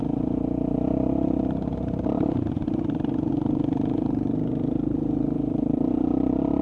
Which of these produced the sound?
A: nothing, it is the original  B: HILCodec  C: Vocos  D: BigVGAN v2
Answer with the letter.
D